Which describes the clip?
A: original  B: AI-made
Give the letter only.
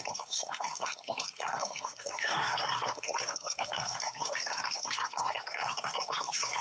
B